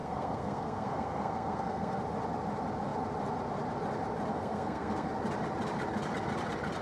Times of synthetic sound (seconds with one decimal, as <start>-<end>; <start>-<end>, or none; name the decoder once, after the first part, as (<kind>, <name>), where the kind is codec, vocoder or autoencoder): 0.0-2.0 (codec, SNAC); 4.3-5.1